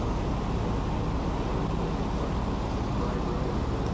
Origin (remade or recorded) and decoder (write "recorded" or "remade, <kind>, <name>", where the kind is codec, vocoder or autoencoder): recorded